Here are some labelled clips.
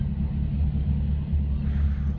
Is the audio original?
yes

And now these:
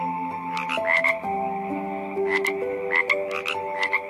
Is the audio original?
yes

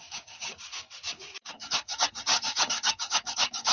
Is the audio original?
no